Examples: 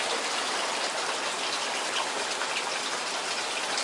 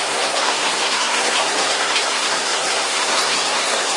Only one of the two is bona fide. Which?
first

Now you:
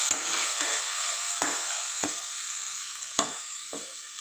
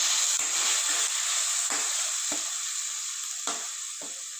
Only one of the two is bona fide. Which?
second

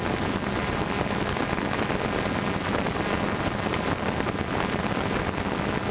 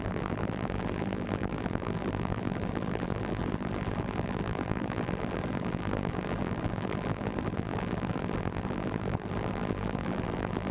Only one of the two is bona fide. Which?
first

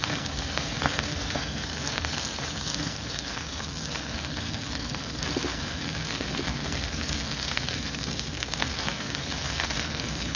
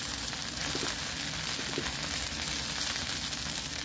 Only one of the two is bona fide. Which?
second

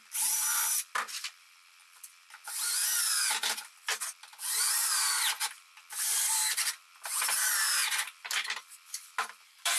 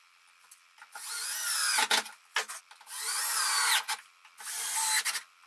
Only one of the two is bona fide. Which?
second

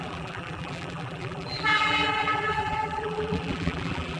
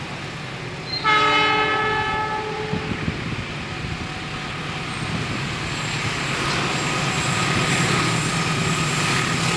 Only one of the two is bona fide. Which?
second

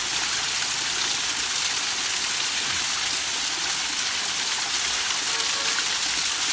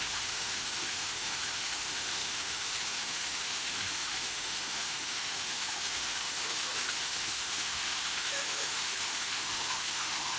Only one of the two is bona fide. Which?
first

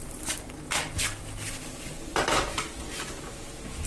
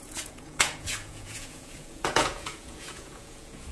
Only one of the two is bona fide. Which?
first